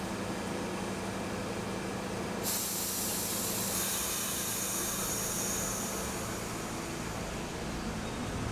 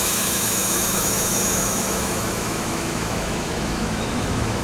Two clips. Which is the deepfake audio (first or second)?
second